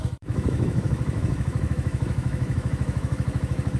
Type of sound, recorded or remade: remade